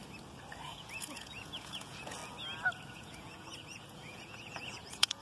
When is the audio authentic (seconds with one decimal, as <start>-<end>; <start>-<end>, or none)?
0.0-0.7; 2.2-2.9